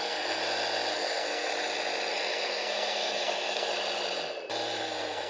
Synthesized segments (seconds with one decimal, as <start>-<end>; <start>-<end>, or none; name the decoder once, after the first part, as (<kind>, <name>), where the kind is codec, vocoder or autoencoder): 0.0-0.4 (codec, SNAC); 0.9-1.5; 2.1-3.7; 4.8-5.3